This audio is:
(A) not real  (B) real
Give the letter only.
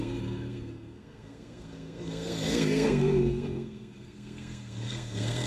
A